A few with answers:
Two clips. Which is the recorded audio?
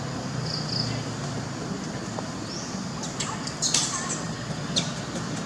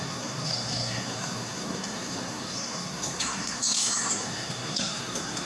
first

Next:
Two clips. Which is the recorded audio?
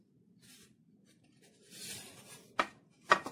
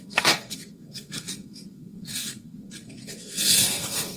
first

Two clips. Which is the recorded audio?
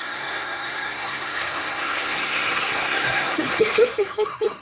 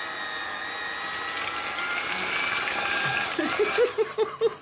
second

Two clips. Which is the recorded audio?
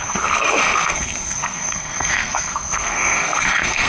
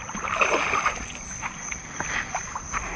second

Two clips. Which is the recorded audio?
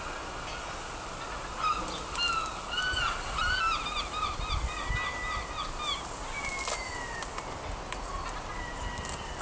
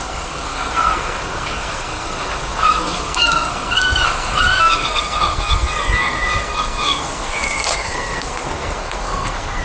first